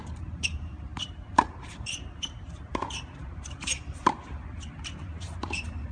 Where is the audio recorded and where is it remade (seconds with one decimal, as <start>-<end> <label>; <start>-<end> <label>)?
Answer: 0.0-5.9 remade